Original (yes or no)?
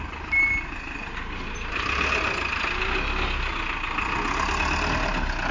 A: yes